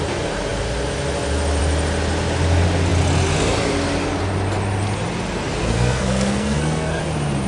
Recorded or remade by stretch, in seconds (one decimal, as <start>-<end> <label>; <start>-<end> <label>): 0.0-5.6 recorded; 5.6-7.0 remade; 7.0-7.5 recorded